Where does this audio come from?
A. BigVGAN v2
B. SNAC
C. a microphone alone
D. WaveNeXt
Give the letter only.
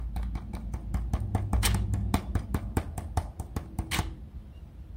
C